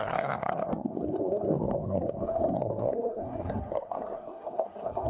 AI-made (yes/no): yes